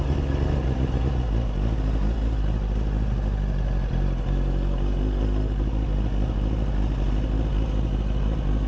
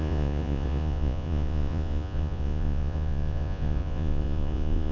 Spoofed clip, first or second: second